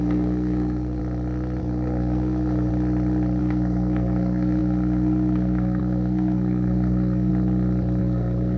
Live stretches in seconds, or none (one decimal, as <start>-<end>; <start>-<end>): 1.0-1.6; 2.7-3.4; 7.3-8.0